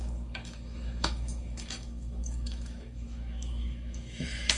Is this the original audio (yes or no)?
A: no